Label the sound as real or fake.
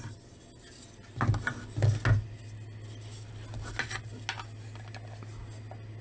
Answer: real